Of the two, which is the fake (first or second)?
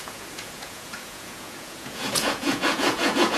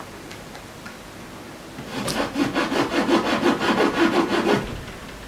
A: first